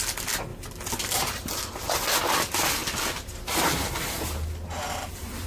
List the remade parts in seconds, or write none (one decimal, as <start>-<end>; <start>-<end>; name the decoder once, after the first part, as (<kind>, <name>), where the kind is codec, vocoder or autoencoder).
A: none